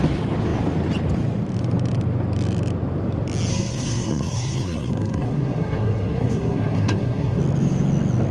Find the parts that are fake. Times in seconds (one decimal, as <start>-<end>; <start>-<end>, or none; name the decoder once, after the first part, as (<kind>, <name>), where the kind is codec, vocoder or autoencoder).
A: 3.5-7.4 (codec, SNAC)

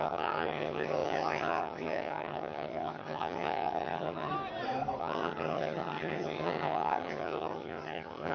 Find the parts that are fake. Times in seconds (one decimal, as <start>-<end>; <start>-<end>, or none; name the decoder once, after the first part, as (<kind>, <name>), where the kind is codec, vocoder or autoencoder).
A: 0.0-4.3 (vocoder, HiFi-GAN); 5.0-8.3